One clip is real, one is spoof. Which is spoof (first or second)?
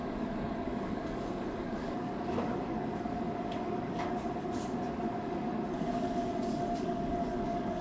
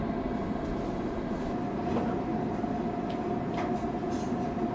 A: first